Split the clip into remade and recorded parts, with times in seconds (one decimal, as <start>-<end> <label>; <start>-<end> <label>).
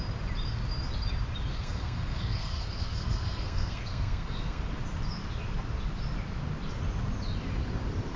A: 0.0-1.5 recorded; 1.5-4.6 remade; 4.6-8.2 recorded